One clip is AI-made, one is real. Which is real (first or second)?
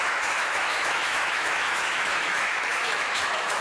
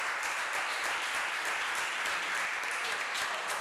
second